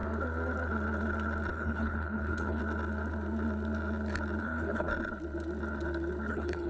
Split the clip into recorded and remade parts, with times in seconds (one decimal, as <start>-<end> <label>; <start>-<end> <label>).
0.0-1.5 recorded; 1.5-2.6 remade; 2.6-4.4 recorded; 4.4-4.9 remade; 4.9-6.3 recorded; 6.3-6.7 remade